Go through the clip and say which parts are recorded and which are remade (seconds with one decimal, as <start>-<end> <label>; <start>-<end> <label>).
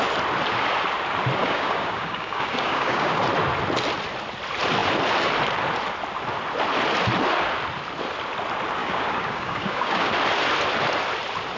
0.0-1.4 recorded; 1.4-3.2 remade; 3.2-8.8 recorded; 8.8-10.1 remade; 10.1-11.6 recorded